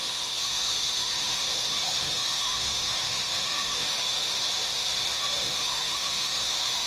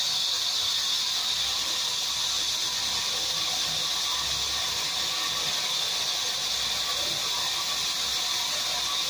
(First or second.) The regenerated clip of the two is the first